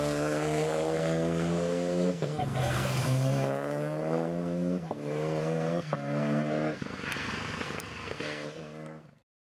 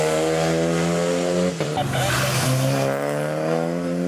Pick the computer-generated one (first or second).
first